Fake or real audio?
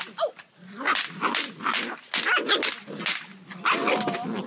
real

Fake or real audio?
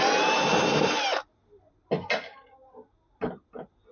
real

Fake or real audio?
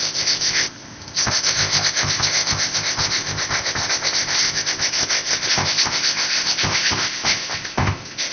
fake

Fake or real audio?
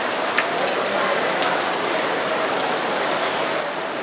real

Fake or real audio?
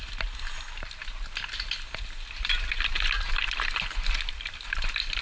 real